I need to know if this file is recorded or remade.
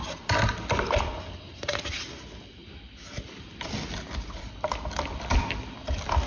recorded